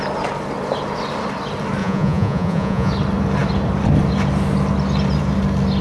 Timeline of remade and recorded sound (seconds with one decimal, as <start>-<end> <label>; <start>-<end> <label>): 0.0-1.8 recorded; 1.8-2.9 remade; 2.9-5.8 recorded